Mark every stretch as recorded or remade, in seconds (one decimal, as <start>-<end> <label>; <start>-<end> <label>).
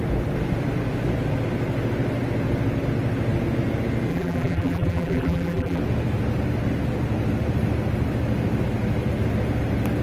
0.0-4.1 recorded; 4.1-5.8 remade; 5.8-10.0 recorded